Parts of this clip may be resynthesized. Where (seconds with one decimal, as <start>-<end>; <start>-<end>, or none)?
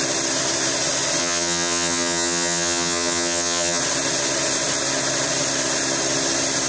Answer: 1.2-3.8